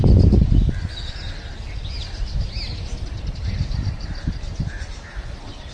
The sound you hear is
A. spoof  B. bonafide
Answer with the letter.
B